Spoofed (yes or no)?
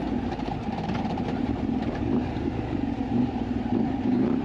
yes